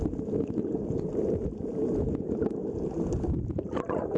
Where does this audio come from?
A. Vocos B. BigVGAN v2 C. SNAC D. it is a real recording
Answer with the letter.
D